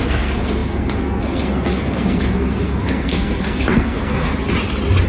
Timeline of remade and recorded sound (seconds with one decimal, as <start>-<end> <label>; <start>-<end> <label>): 0.0-4.3 remade; 4.3-5.1 recorded